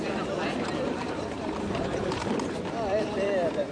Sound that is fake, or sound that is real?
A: fake